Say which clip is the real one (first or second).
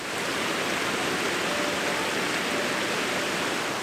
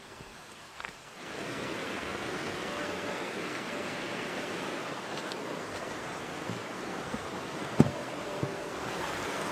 first